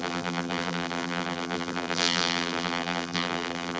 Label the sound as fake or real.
fake